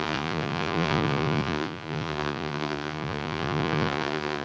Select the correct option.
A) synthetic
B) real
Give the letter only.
A